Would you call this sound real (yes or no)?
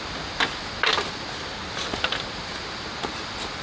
yes